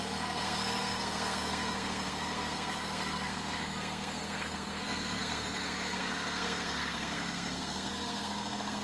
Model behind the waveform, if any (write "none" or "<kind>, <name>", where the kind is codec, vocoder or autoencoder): codec, SNAC